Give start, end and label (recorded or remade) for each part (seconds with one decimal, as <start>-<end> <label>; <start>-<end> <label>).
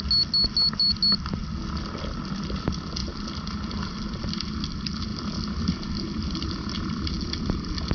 0.0-7.9 recorded